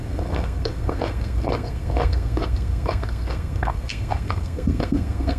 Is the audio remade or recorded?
remade